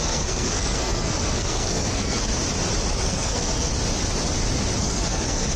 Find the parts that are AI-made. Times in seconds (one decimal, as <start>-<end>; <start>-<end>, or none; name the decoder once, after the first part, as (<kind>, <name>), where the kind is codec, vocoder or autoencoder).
0.0-2.3 (codec, SNAC); 2.9-3.7; 4.8-5.6